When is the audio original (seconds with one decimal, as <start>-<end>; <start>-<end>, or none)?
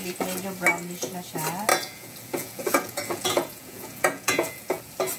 0.0-1.7; 4.8-5.2